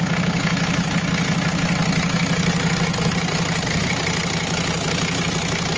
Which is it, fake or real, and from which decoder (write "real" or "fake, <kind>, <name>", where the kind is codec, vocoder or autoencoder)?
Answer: real